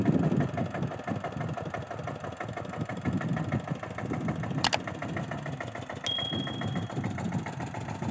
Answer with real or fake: real